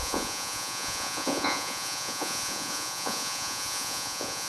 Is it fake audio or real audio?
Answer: fake